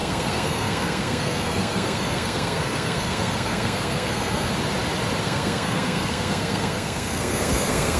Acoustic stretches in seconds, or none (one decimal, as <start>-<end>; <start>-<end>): 4.5-5.2